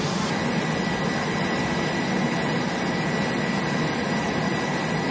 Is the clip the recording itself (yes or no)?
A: yes